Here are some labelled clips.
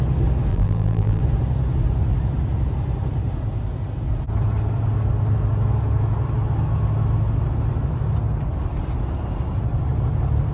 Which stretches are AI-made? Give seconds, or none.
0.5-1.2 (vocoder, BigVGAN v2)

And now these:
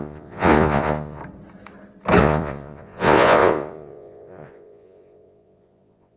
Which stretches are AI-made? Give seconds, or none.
0.0-1.2 (vocoder, Vocos); 2.2-6.2

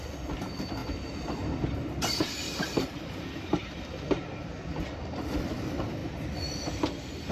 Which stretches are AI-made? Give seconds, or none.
0.8-4.9 (vocoder, BigVGAN v2)

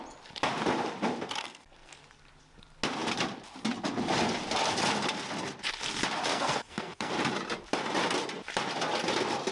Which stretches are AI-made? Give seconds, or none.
1.4-2.0 (codec, SNAC); 6.3-7.1

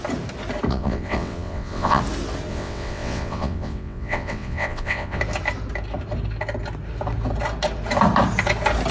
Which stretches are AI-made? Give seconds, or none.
0.7-2.0 (vocoder, WaveNeXt); 2.5-5.2

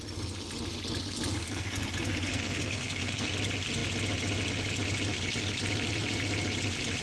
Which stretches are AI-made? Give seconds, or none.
1.4-3.3 (codec, SNAC)

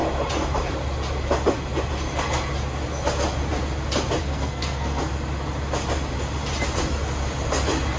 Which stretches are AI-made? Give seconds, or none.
4.2-5.0 (codec, SNAC)